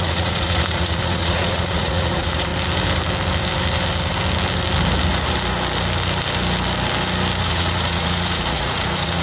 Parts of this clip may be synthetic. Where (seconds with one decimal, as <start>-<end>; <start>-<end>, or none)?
0.0-2.5; 7.4-9.2